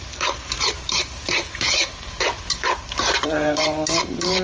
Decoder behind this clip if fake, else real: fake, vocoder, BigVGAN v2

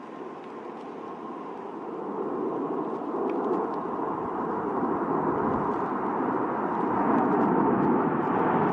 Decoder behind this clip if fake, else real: real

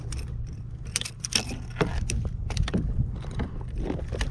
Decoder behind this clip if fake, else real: fake, vocoder, BigVGAN v2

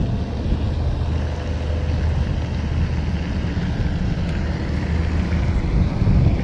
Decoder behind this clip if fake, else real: real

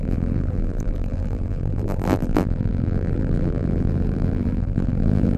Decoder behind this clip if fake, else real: fake, vocoder, BigVGAN v2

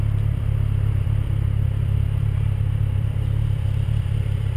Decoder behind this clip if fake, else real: fake, vocoder, BigVGAN v2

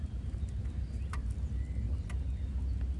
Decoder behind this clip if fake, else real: real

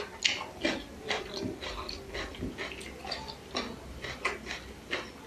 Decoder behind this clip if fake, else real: real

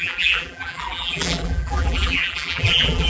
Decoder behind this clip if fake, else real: fake, vocoder, BigVGAN v2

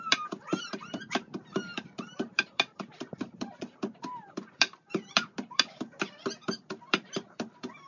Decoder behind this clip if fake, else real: fake, vocoder, BigVGAN v2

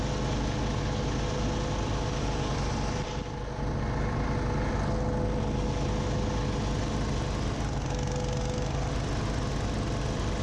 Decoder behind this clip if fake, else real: real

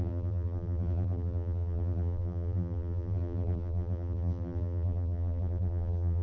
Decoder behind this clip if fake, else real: fake, vocoder, BigVGAN v2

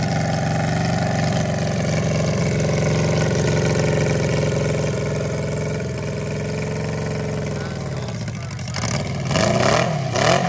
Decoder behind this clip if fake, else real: real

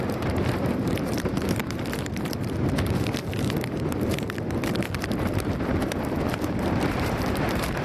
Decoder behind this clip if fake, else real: fake, vocoder, BigVGAN v2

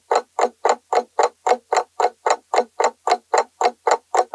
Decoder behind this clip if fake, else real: real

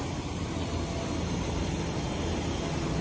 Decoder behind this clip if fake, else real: real